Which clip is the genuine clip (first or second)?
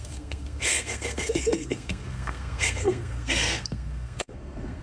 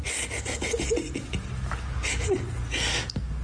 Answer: second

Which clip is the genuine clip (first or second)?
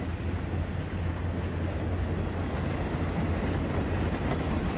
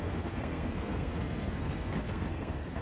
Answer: first